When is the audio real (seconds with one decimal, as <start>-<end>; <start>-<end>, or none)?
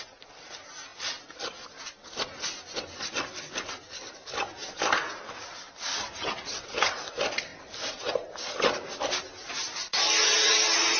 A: 0.0-5.9; 7.0-11.0